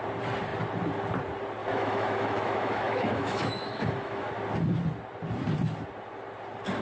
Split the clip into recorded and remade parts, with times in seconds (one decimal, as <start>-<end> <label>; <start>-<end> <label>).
0.0-1.6 recorded; 1.6-4.3 remade; 4.3-6.8 recorded